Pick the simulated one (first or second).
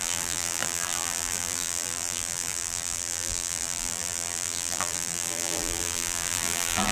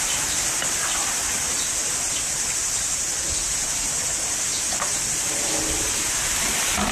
first